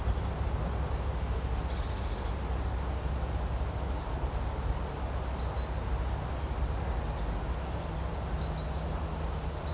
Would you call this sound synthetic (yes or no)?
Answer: no